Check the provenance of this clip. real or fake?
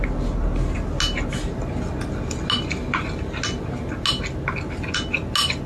real